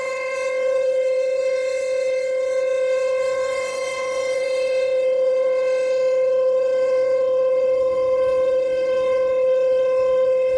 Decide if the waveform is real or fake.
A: fake